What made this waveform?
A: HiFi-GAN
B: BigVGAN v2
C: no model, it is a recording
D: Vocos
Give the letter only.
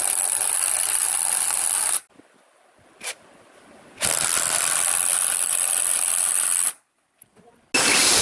C